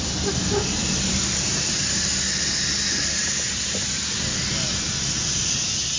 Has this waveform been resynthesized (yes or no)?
no